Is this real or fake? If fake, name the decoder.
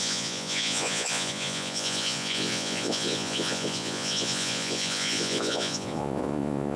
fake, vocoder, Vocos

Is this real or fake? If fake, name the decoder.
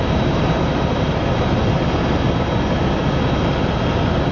real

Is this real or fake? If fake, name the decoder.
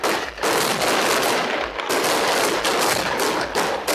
real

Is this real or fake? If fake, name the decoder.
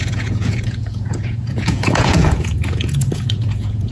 fake, vocoder, Vocos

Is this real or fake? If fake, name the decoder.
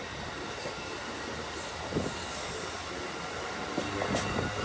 real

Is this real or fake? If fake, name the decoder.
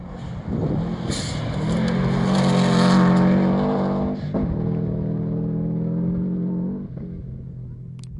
real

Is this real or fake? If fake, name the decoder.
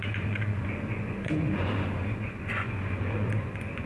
fake, vocoder, Vocos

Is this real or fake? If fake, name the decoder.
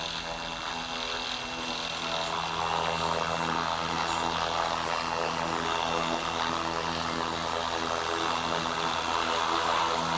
real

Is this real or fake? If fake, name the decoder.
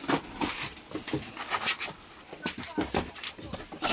real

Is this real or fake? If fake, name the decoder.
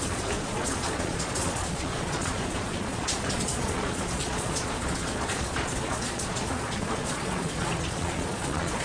fake, vocoder, Vocos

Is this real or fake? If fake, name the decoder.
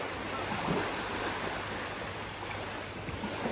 real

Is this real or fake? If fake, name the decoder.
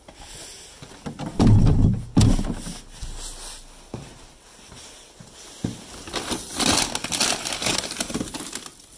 real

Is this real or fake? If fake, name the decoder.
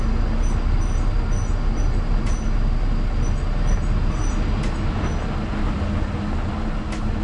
real